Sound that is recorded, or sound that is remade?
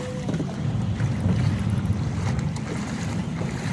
recorded